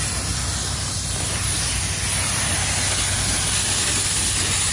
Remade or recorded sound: recorded